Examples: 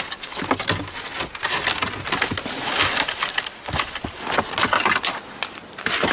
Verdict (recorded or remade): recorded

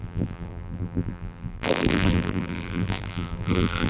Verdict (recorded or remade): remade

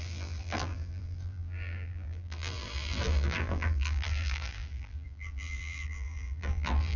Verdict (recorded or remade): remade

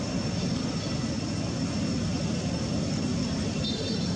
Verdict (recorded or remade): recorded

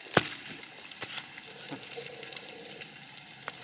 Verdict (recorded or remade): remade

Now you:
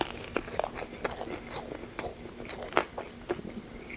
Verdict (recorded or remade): recorded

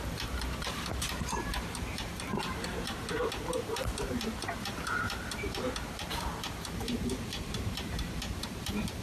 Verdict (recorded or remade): remade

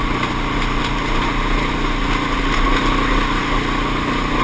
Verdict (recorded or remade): recorded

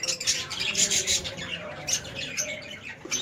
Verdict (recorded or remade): remade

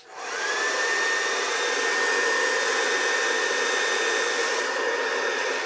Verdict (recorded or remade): recorded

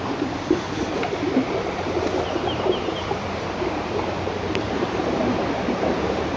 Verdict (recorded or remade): remade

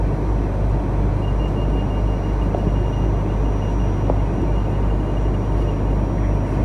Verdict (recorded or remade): recorded